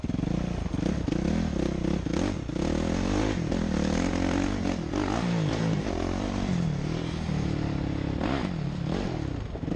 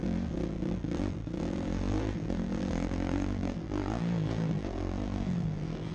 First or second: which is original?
first